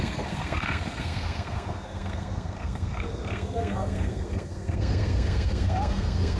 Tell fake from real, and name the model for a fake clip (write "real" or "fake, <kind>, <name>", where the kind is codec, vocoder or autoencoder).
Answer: fake, codec, SNAC